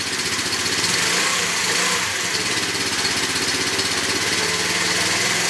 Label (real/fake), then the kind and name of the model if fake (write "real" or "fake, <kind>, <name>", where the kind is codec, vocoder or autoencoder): fake, vocoder, BigVGAN v2